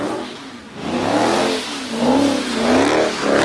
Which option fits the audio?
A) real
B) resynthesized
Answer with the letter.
A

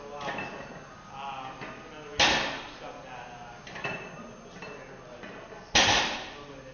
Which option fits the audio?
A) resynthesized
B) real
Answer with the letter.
B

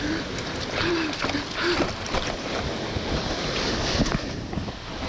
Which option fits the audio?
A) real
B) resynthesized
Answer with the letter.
A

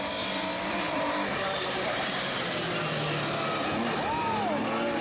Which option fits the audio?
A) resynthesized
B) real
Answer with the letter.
B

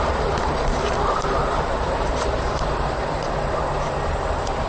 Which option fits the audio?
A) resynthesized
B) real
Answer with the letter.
A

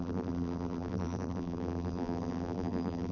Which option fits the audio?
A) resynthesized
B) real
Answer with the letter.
A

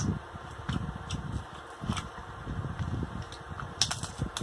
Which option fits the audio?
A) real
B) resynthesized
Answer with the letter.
A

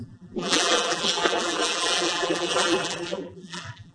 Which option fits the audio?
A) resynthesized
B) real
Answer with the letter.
A